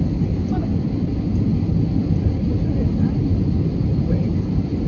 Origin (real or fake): real